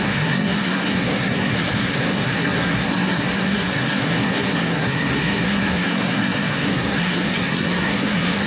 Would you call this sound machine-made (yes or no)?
yes